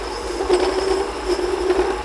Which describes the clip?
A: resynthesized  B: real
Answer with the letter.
B